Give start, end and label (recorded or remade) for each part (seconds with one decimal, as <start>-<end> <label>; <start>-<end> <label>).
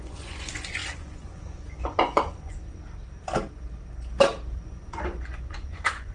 0.0-2.7 remade; 2.7-4.6 recorded; 4.6-6.1 remade